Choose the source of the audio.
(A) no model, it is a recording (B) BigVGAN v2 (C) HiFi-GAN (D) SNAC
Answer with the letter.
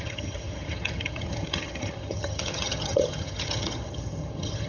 C